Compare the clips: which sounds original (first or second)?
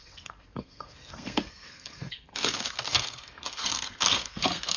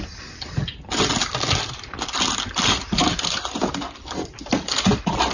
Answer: second